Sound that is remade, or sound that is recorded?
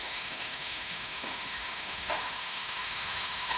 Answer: remade